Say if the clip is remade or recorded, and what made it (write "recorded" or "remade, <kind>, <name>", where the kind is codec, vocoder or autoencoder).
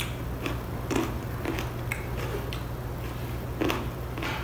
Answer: recorded